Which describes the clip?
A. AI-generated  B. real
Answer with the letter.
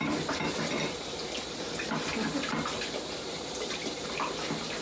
B